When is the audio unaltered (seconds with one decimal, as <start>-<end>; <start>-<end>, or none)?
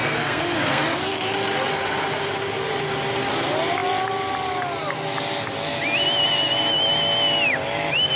0.8-8.2